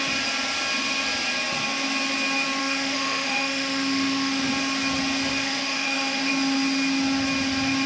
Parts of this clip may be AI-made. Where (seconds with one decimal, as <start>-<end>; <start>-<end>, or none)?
2.6-4.5; 5.3-6.3